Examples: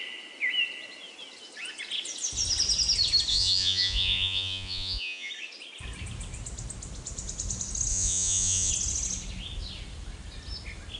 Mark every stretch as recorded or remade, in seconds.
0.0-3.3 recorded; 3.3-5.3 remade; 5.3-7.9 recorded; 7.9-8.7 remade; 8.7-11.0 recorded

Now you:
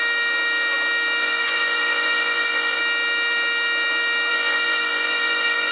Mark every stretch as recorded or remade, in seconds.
0.0-1.2 recorded; 1.2-2.8 remade; 2.8-4.3 recorded; 4.3-5.7 remade

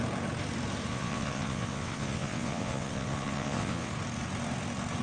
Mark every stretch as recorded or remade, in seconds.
0.0-0.9 recorded; 0.9-3.9 remade; 3.9-5.0 recorded

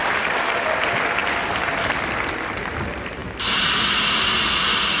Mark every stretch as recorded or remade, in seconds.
0.0-0.5 remade; 0.5-1.2 recorded; 1.2-2.5 remade; 2.5-5.0 recorded

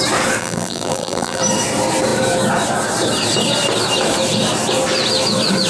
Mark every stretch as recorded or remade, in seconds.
0.0-0.4 recorded; 0.4-1.4 remade; 1.4-5.7 recorded

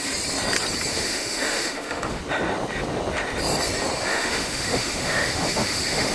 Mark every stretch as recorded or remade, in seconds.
0.0-0.9 recorded; 0.9-2.2 remade; 2.2-4.1 recorded; 4.1-6.1 remade

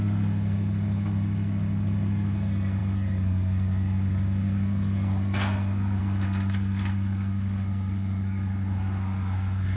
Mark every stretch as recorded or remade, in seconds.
0.0-9.8 remade

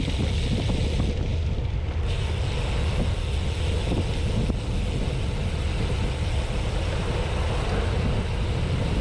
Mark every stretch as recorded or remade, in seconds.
0.0-9.0 recorded